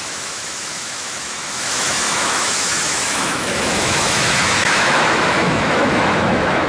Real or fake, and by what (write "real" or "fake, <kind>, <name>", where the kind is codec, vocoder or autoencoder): fake, autoencoder, DAC-VAE